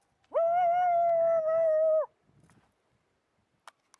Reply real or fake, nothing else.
real